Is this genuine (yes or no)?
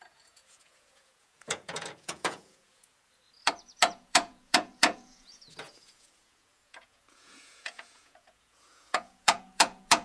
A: no